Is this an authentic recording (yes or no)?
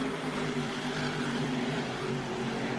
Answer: no